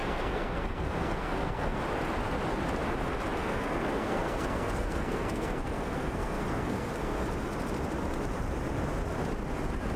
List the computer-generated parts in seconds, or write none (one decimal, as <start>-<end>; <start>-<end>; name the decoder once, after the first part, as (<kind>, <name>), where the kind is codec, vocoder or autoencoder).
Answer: 0.0-1.8 (codec, SNAC); 3.4-7.3